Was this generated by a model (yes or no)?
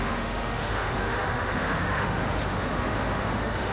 yes